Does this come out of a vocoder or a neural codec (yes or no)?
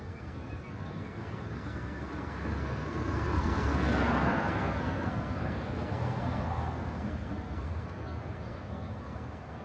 yes